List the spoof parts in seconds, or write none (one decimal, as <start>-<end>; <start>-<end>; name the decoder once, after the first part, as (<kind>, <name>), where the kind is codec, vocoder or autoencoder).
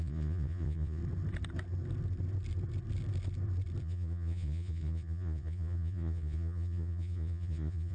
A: 0.0-1.0 (vocoder, Vocos); 3.8-7.9